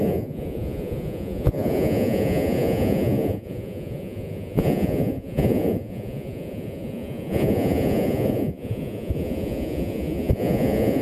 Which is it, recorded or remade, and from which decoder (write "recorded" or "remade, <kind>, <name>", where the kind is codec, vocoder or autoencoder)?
remade, vocoder, Vocos